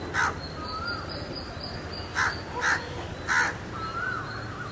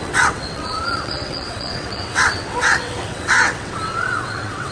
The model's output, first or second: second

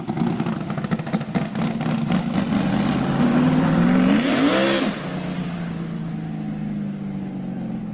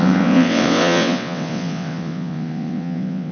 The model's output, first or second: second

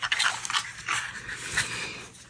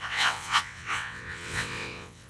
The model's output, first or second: second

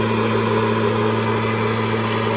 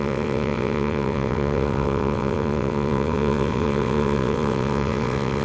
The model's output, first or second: second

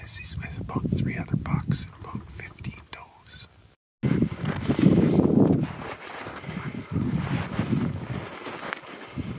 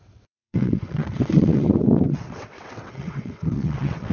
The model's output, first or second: second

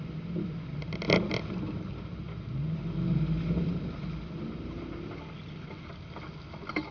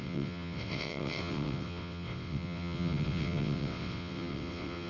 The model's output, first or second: second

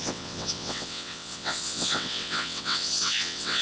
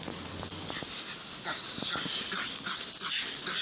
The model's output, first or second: first